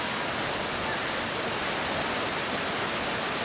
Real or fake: real